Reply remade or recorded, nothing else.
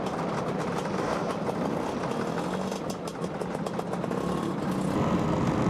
recorded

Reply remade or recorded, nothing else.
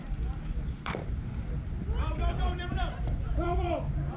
remade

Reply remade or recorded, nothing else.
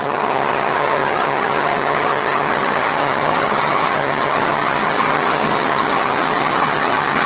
remade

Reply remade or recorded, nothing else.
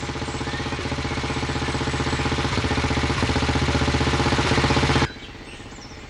recorded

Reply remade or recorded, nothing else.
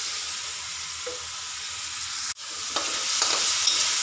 recorded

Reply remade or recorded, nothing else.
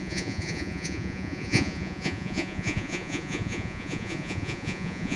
remade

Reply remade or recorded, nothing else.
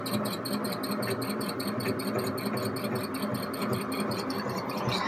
recorded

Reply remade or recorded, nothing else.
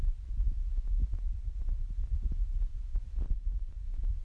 recorded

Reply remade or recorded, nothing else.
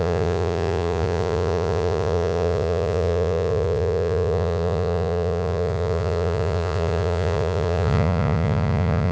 remade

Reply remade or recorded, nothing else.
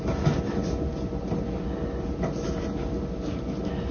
recorded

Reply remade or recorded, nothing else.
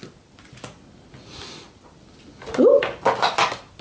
recorded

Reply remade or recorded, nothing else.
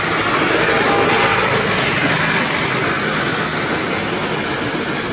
recorded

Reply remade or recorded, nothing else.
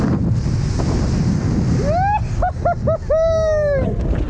recorded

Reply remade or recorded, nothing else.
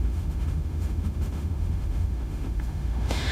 remade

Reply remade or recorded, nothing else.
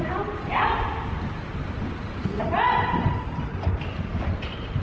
remade